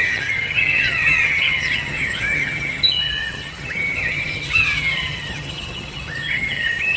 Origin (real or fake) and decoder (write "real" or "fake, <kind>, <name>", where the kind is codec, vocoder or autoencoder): fake, vocoder, HiFi-GAN